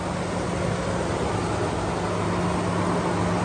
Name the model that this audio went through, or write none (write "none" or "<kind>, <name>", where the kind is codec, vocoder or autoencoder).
none